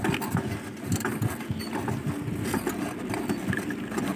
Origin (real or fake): real